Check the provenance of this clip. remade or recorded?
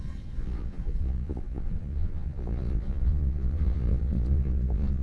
remade